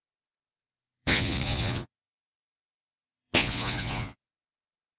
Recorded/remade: remade